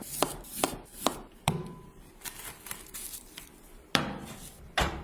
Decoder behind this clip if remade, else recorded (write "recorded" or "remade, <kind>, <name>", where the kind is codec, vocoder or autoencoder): remade, vocoder, BigVGAN v2